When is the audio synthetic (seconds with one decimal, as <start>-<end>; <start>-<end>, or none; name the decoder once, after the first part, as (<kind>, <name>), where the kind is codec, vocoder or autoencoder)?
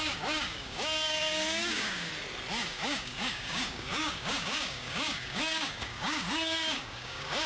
0.0-2.1 (codec, DAC); 2.6-7.5